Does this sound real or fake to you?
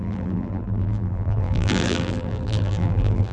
fake